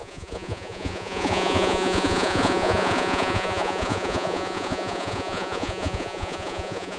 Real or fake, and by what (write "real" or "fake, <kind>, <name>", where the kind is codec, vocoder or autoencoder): fake, vocoder, Vocos